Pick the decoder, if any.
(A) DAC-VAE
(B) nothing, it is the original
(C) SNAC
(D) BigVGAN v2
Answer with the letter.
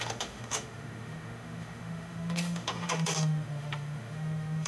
A